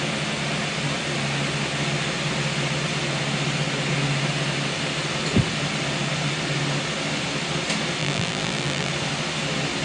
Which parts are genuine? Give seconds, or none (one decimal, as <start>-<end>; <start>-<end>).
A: 0.0-8.0; 8.9-9.8